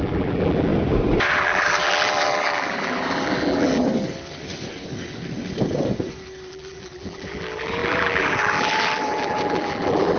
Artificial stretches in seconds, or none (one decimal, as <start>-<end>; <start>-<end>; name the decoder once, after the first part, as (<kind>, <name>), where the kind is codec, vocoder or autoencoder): 0.0-0.7 (vocoder, BigVGAN v2); 1.3-3.9; 6.5-10.2